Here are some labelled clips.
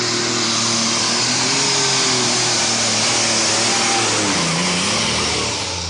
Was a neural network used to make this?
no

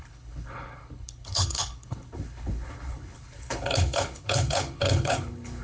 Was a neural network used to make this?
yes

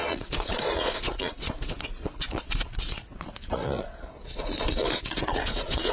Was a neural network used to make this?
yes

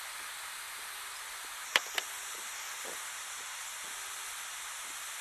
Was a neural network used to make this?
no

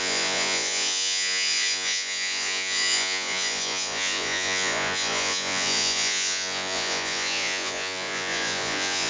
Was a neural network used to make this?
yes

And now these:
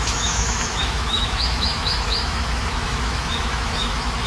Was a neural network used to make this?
yes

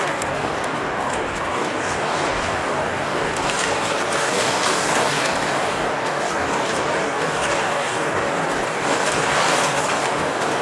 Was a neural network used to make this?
yes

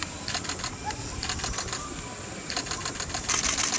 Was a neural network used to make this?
no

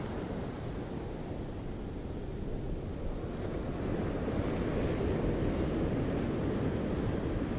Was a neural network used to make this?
no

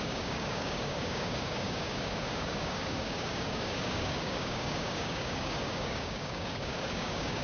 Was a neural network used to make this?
yes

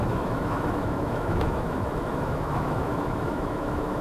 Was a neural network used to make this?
yes